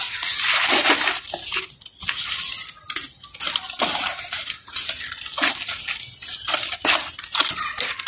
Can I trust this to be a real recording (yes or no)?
yes